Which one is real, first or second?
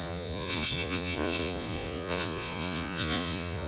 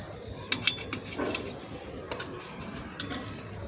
second